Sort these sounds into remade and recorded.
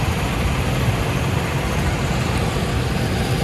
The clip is recorded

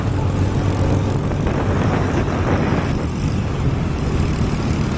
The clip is recorded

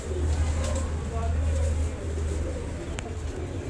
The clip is recorded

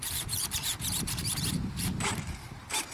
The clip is remade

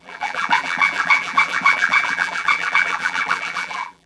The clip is remade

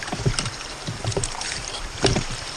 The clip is remade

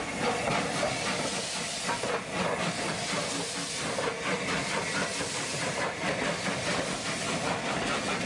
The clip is recorded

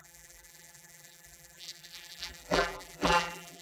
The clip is remade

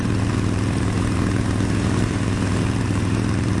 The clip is remade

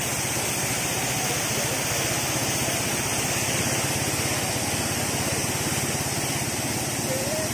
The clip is recorded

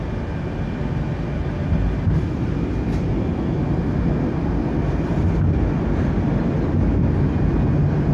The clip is recorded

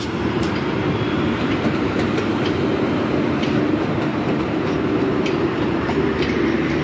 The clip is remade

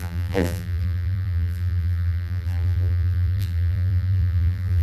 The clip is remade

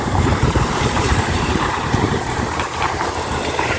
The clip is remade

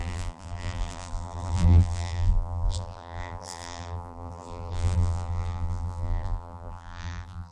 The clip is remade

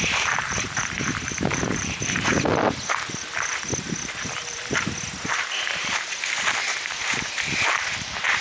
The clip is remade